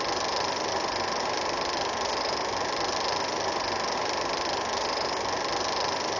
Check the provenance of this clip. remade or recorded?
recorded